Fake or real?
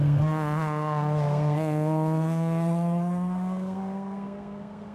fake